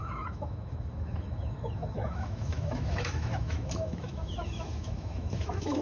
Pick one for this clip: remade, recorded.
remade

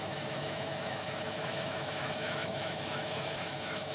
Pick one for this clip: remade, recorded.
remade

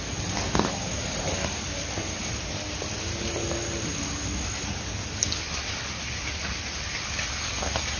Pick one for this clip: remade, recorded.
recorded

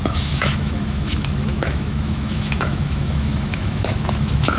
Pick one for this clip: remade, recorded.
remade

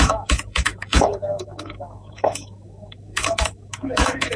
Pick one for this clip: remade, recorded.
remade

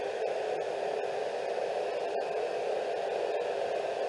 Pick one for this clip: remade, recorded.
recorded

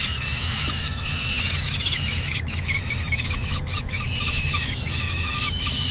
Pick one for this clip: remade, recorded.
remade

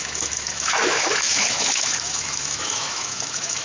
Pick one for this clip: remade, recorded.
remade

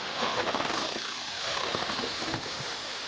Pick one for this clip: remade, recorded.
remade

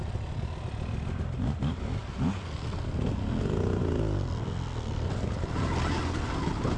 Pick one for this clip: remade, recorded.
recorded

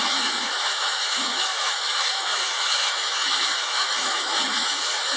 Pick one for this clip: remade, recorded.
remade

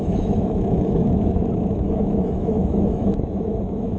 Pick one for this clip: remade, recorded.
remade